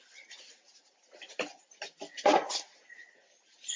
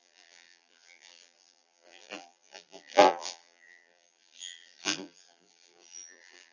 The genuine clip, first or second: first